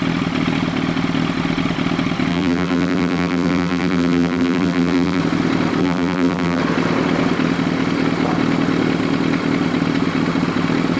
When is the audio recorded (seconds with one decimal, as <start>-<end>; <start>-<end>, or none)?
0.0-2.3; 5.2-5.8; 6.6-11.0